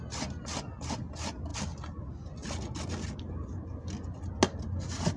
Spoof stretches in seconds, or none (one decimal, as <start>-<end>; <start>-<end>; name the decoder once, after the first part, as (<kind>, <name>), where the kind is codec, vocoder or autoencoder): none